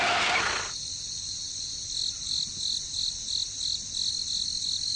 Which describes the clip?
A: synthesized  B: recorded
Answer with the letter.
B